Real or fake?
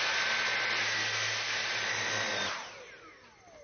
real